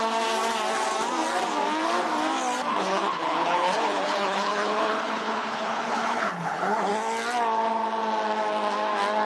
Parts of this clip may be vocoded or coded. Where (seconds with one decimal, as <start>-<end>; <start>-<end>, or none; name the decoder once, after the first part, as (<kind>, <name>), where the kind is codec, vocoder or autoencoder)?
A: 2.7-6.9 (codec, HILCodec)